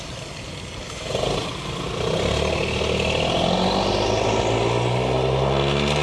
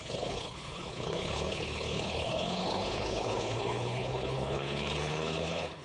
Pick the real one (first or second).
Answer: first